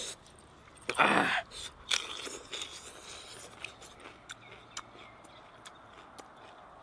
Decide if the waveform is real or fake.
real